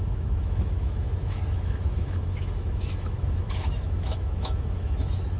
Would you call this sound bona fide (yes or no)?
no